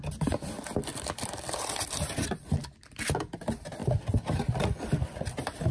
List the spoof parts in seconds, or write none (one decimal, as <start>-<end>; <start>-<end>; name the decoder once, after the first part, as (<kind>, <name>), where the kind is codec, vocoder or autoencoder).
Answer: 0.9-1.9 (vocoder, BigVGAN v2); 3.8-5.3